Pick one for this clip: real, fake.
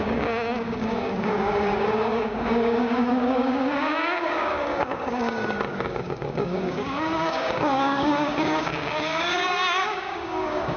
fake